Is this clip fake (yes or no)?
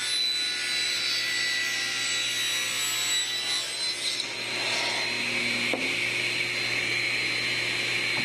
no